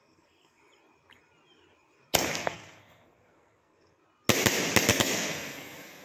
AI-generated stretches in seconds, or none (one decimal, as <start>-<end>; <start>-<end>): 0.0-0.6; 2.3-4.0; 4.9-6.0